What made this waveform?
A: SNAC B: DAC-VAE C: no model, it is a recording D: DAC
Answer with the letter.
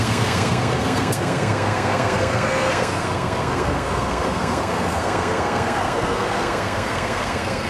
A